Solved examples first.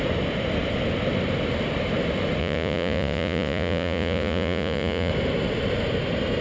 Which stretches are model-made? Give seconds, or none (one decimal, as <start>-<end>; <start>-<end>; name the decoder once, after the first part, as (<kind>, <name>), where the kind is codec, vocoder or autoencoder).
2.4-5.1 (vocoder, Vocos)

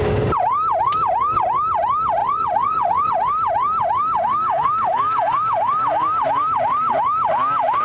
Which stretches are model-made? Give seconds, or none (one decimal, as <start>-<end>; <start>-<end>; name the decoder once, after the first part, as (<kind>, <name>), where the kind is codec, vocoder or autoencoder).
2.2-3.1 (vocoder, Vocos)

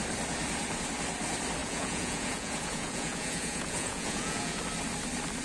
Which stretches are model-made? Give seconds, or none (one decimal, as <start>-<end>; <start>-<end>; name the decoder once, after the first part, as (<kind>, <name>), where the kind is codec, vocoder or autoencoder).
1.6-4.6 (vocoder, Vocos)

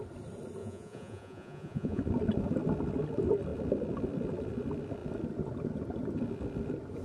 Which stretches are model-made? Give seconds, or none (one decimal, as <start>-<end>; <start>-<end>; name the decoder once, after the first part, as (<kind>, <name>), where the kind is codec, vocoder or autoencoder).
0.6-2.0 (vocoder, Vocos)

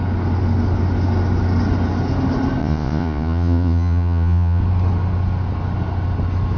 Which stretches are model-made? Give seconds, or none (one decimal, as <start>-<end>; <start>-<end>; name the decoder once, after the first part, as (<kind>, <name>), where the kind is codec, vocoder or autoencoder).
2.6-4.6 (vocoder, Vocos)

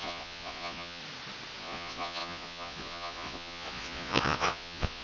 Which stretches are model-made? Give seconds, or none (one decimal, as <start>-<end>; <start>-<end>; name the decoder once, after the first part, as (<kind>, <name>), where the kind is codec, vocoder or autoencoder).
0.0-1.0 (vocoder, Vocos); 1.6-5.0